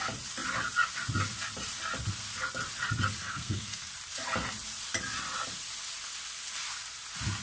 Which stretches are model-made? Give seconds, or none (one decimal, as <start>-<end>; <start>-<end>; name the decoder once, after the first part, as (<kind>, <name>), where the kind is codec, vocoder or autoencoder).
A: 3.2-3.9 (codec, SNAC)